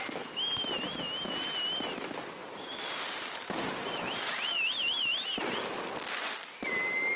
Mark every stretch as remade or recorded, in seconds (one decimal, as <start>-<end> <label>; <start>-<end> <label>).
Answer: 0.0-2.4 recorded; 2.4-6.7 remade; 6.7-7.2 recorded